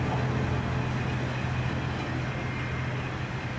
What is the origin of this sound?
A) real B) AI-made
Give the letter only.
A